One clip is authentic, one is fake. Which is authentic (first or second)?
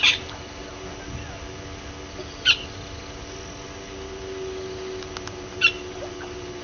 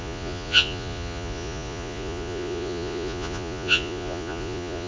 first